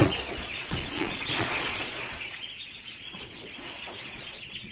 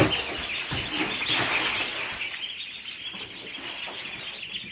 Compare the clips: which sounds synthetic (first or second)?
first